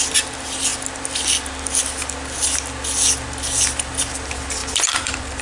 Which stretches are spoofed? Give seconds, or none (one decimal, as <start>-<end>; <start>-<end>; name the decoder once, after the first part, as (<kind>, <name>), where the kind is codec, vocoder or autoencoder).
4.6-5.4 (vocoder, BigVGAN v2)